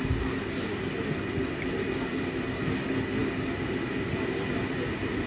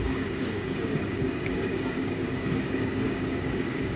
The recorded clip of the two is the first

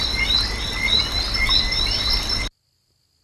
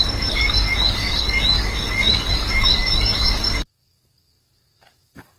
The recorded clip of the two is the first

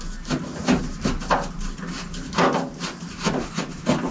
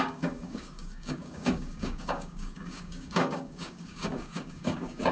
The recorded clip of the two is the first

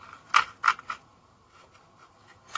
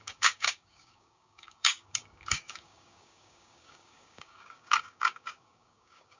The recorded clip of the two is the first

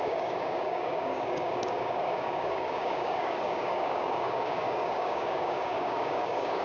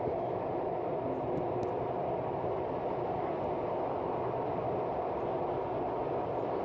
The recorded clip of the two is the second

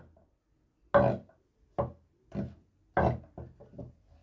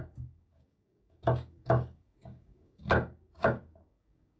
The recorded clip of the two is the first